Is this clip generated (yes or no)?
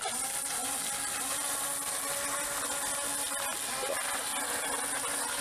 no